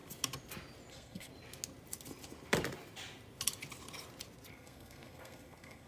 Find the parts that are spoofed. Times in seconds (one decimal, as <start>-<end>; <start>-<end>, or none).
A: 0.9-1.3; 4.5-5.9